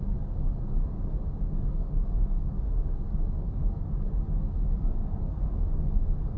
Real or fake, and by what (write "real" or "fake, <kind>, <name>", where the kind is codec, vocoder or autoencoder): fake, codec, DAC